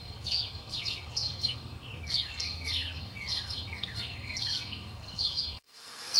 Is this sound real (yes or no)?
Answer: no